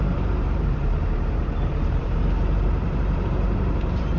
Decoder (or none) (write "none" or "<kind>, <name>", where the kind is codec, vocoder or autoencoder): vocoder, BigVGAN v2